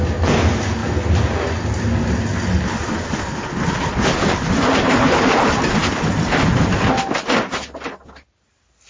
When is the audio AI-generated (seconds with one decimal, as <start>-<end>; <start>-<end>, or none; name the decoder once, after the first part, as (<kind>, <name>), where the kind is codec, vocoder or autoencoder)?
none